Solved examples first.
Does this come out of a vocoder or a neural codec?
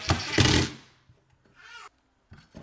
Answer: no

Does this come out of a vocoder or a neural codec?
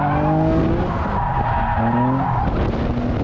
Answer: no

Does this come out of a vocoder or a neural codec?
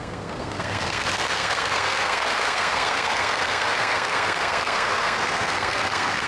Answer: yes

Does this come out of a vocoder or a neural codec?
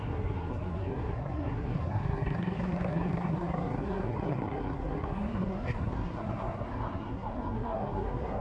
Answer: yes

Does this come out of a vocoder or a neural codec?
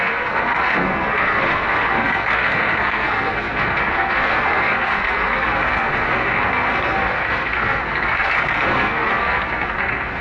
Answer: yes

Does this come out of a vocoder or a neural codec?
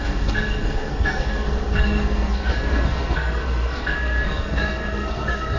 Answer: yes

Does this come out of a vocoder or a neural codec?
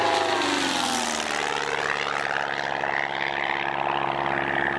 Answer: no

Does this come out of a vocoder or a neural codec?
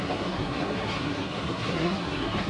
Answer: yes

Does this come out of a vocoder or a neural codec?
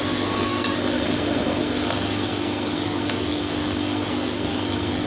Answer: yes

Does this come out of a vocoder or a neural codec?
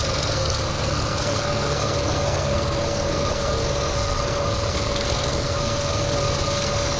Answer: yes